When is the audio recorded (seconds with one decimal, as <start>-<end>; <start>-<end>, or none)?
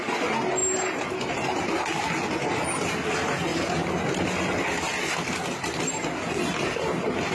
0.0-7.3